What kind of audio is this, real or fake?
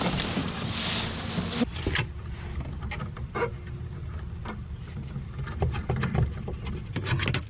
real